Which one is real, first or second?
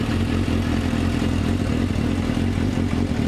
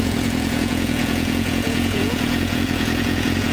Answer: first